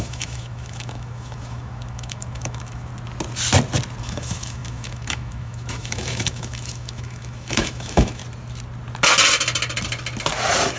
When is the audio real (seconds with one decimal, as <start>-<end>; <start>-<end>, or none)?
2.9-4.0; 8.2-10.8